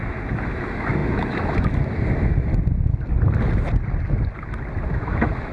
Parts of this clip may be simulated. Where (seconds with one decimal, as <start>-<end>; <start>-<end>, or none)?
0.0-2.5; 4.9-5.5